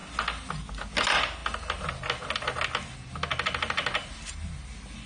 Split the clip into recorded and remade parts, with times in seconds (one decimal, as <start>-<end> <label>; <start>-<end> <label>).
0.0-5.1 recorded